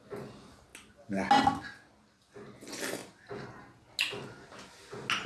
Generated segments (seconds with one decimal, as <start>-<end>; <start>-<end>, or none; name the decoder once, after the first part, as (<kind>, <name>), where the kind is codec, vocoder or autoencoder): none